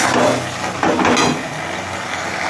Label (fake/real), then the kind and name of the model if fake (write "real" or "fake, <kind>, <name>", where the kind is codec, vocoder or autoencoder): real